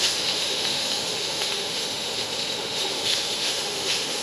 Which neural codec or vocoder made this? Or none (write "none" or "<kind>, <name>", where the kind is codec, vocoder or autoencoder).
autoencoder, DAC-VAE